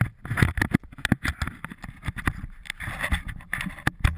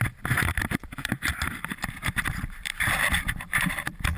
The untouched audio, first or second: first